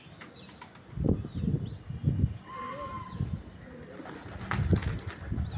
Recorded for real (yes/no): yes